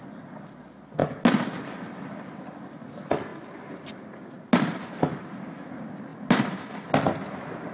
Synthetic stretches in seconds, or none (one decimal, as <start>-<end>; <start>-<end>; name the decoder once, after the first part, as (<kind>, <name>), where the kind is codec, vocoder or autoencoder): none